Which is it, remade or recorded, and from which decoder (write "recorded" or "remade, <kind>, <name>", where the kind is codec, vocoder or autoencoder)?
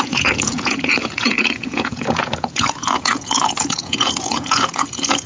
remade, vocoder, Vocos